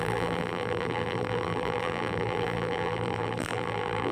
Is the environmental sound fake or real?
fake